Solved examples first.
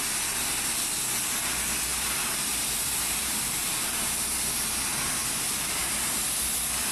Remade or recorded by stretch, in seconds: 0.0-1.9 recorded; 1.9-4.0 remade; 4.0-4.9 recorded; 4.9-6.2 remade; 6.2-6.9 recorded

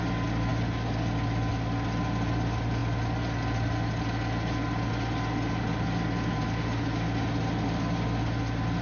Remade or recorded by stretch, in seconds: 0.0-8.8 recorded

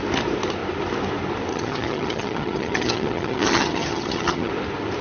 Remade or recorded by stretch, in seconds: 0.0-1.5 recorded; 1.5-4.5 remade; 4.5-5.0 recorded

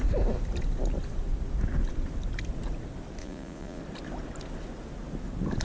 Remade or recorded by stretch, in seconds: 0.0-3.2 recorded; 3.2-3.8 remade; 3.8-5.6 recorded